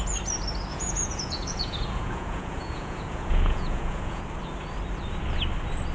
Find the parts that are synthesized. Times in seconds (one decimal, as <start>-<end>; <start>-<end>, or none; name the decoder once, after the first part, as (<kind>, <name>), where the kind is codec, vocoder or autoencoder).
0.7-4.2 (vocoder, Vocos)